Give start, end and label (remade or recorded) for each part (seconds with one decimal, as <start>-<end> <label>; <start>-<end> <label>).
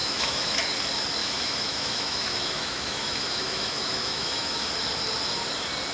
0.0-0.6 remade; 0.6-1.2 recorded; 1.2-4.7 remade; 4.7-5.9 recorded